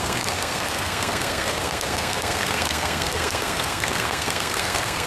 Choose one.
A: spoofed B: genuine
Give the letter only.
A